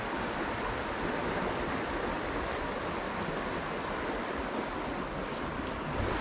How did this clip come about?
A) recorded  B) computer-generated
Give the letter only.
A